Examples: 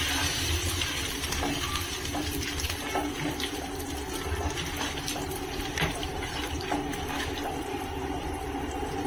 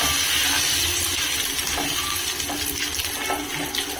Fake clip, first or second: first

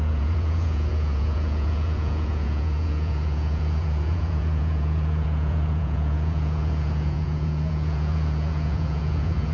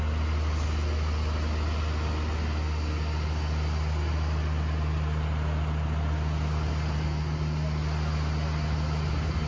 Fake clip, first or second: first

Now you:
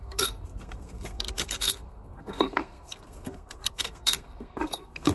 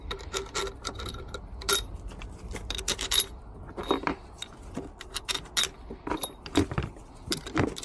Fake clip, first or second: first